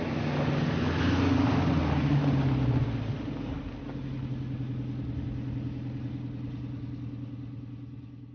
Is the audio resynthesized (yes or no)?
no